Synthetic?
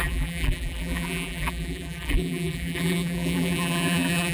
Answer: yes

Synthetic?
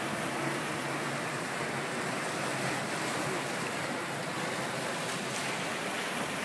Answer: no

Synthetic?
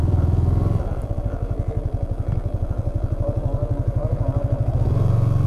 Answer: yes